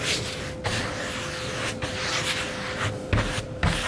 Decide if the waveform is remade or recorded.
recorded